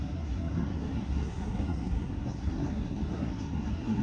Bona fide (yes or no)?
no